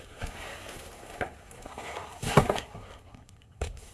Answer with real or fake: fake